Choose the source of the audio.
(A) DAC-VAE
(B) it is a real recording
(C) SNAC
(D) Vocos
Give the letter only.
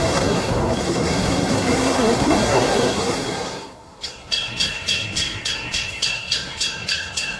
C